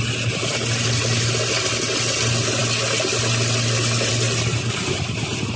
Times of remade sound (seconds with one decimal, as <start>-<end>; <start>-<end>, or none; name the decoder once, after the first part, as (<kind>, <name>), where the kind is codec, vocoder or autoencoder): none